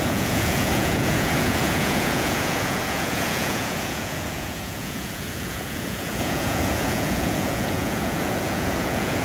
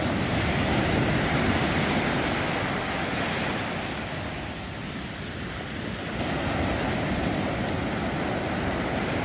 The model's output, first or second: first